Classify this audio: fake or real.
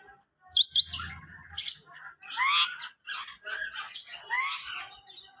real